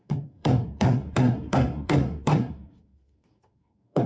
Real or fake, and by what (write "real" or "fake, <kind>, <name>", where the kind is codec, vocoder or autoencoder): fake, codec, SNAC